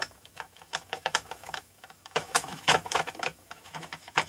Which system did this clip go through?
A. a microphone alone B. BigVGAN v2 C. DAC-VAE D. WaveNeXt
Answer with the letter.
C